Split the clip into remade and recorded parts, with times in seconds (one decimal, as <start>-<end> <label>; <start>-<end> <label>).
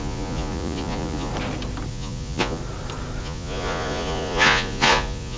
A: 0.0-1.3 remade; 1.3-1.9 recorded; 1.9-2.6 remade; 2.6-3.2 recorded; 3.2-5.4 remade